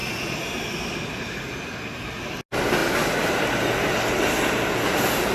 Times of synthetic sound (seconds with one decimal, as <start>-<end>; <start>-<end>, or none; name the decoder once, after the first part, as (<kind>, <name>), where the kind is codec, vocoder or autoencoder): none